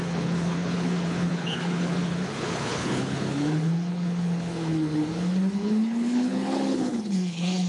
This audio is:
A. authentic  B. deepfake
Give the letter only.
B